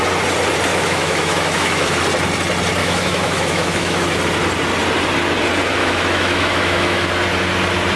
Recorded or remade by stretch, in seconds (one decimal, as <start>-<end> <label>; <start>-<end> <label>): 0.0-0.7 recorded; 0.7-2.0 remade; 2.0-2.8 recorded; 2.8-4.2 remade; 4.2-5.8 recorded; 5.8-7.1 remade; 7.1-8.0 recorded